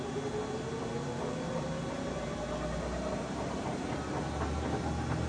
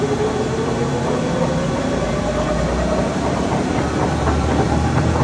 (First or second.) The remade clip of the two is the second